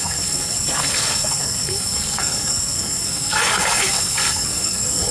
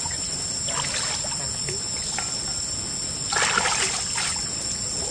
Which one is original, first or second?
second